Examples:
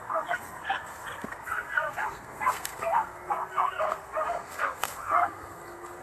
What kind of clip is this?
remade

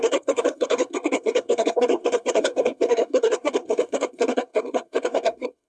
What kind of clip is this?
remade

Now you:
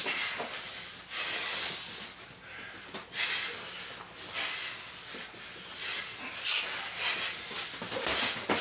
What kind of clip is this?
recorded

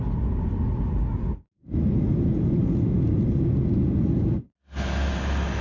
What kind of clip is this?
recorded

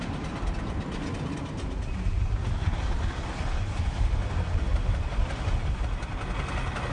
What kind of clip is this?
recorded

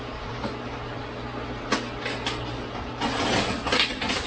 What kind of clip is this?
recorded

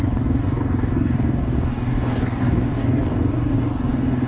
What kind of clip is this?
remade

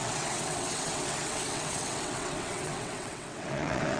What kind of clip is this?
remade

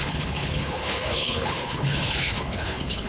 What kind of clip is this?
remade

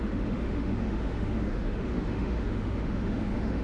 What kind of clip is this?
remade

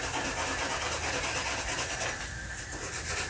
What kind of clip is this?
recorded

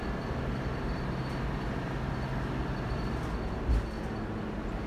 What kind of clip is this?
recorded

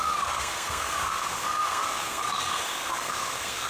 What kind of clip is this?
remade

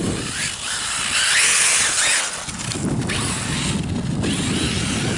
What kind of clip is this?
recorded